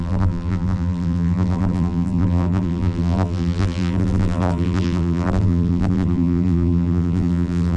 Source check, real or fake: fake